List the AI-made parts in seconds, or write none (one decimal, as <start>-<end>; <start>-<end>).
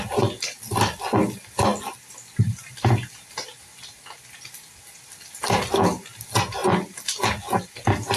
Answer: none